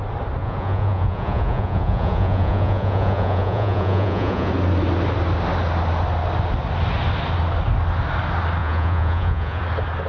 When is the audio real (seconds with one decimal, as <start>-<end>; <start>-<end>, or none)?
0.0-0.4; 4.5-8.6; 9.6-10.1